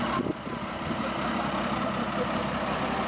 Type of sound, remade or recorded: recorded